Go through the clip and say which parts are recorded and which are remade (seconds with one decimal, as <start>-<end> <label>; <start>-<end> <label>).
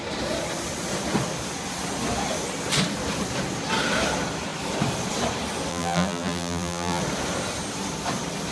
0.0-5.7 recorded; 5.7-7.0 remade; 7.0-8.5 recorded